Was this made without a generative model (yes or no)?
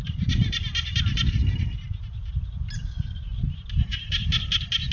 yes